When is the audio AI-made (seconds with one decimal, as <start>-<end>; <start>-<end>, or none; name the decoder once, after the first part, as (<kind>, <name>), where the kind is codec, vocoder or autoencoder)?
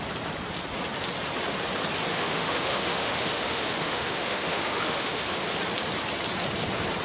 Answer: 2.1-5.2 (autoencoder, DAC-VAE)